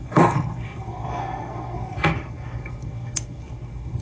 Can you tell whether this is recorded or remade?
remade